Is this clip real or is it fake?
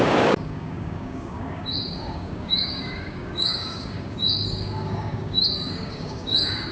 fake